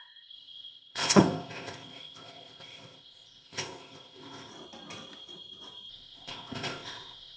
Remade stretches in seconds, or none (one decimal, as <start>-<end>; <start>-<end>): 0.0-4.5; 5.9-7.4